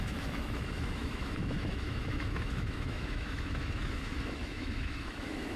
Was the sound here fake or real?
fake